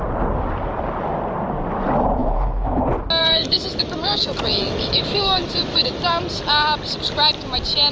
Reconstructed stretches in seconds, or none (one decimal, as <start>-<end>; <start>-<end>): 2.2-2.8; 3.2-6.0